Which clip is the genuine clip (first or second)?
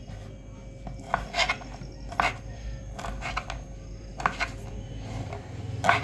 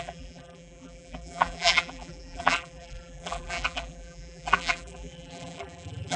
first